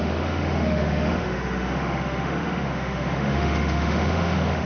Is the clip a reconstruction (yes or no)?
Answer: yes